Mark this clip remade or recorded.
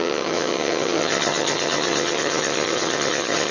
remade